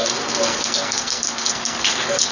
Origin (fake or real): fake